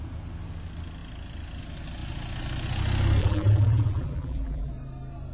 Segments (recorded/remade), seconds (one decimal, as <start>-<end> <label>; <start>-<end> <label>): 0.0-3.2 recorded; 3.2-4.7 remade; 4.7-5.3 recorded